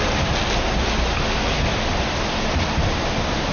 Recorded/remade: recorded